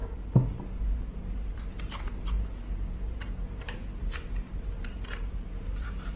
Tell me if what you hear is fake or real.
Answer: fake